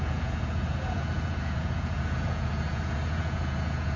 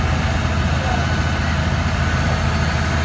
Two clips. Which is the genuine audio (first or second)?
second